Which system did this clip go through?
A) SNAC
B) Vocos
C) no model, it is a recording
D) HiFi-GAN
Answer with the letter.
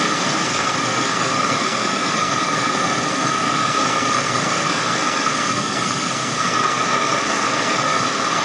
A